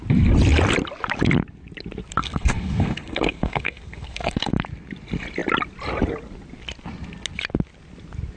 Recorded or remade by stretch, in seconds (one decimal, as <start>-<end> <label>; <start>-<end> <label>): 0.0-2.2 recorded; 2.2-4.5 remade; 4.5-8.4 recorded